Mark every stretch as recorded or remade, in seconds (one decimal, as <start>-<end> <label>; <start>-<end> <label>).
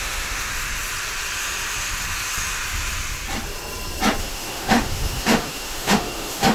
0.0-0.5 remade; 0.5-4.2 recorded; 4.2-6.5 remade